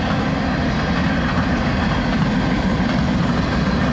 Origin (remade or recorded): recorded